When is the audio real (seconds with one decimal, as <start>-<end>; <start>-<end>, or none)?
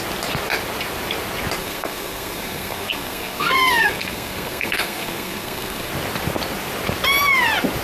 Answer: 0.0-1.6; 5.9-7.8